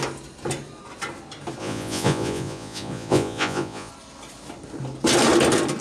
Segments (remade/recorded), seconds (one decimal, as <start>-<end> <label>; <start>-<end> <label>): 0.0-1.6 recorded; 1.6-3.9 remade; 3.9-5.8 recorded

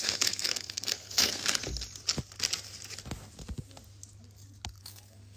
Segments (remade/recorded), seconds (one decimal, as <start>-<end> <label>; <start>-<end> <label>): 0.0-1.6 remade; 1.6-4.8 recorded; 4.8-5.4 remade

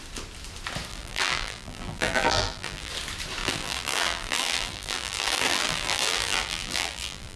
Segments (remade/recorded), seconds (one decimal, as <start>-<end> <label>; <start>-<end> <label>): 0.0-0.9 recorded; 0.9-2.9 remade; 2.9-3.4 recorded; 3.4-7.4 remade

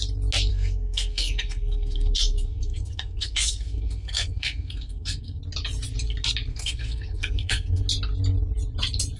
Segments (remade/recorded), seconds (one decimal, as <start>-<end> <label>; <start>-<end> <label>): 0.0-0.5 recorded; 0.5-5.4 remade; 5.4-6.5 recorded; 6.5-7.8 remade; 7.8-9.2 recorded